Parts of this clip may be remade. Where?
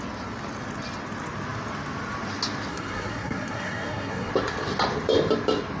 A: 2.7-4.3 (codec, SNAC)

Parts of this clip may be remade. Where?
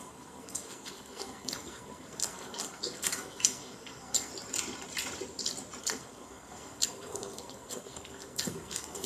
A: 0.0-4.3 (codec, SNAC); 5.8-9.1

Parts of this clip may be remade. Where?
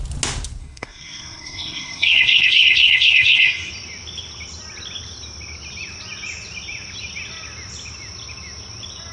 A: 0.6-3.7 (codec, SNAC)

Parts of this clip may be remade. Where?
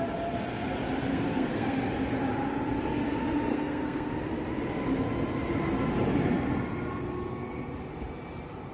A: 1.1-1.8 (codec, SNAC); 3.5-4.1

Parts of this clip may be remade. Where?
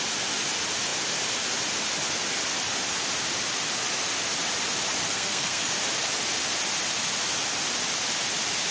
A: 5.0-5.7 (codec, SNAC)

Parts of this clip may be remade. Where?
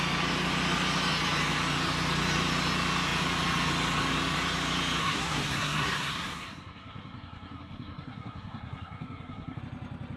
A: 5.0-9.6 (codec, SNAC)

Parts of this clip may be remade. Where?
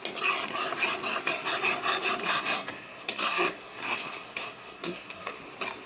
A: 2.2-5.4 (codec, SNAC)